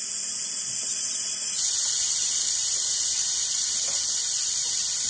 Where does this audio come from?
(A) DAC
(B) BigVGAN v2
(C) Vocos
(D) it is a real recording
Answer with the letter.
D